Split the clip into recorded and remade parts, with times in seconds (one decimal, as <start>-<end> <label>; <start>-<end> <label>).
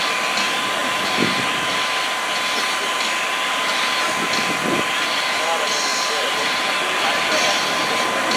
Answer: 0.0-5.9 recorded; 5.9-7.0 remade; 7.0-8.4 recorded